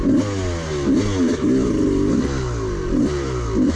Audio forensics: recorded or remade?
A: recorded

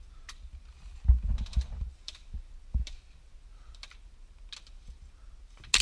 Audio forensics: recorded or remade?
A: recorded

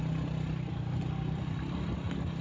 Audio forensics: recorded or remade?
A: recorded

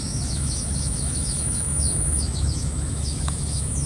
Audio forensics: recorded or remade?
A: remade